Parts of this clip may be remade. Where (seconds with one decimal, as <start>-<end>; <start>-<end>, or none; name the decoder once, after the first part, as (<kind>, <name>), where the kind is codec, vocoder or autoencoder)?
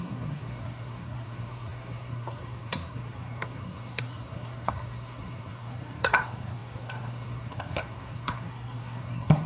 0.0-9.5 (codec, SNAC)